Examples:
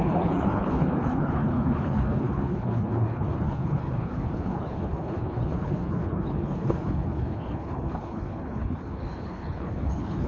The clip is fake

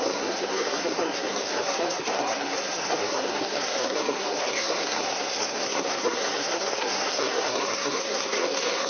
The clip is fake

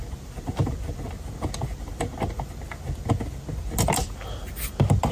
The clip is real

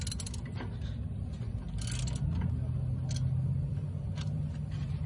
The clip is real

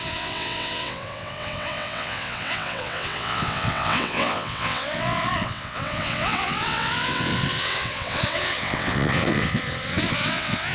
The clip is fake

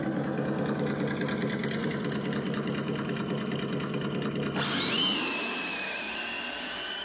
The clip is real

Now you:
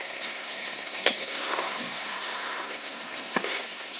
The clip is fake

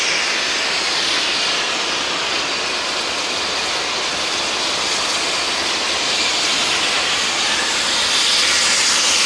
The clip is real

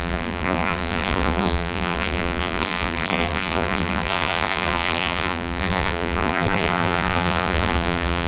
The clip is fake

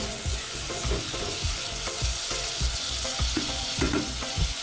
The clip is fake